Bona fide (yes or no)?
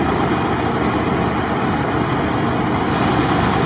yes